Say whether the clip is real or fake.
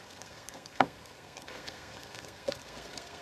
fake